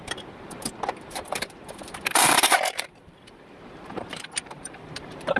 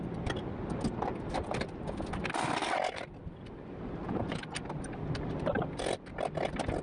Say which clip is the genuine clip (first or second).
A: second